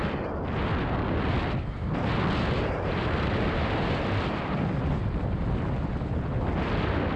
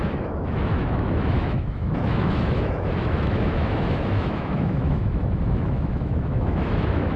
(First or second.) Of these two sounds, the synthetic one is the second